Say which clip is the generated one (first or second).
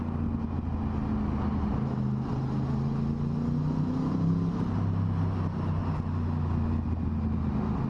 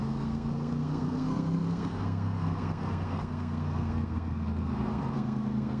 second